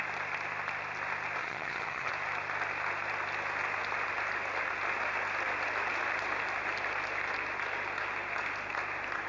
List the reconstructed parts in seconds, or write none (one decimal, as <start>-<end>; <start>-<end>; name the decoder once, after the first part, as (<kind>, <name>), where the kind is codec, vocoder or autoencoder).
1.4-2.1 (vocoder, HiFi-GAN)